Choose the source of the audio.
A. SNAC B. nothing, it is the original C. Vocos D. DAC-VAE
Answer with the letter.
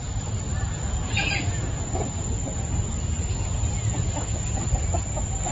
B